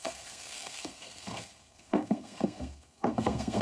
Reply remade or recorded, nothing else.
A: remade